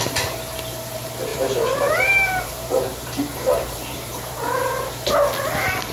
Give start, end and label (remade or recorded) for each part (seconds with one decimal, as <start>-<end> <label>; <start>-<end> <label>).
0.0-1.3 recorded; 1.3-4.8 remade; 4.8-5.9 recorded